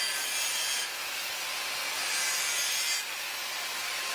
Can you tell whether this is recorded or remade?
recorded